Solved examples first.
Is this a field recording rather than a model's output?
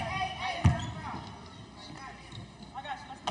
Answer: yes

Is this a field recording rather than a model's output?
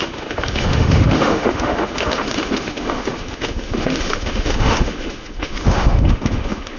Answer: no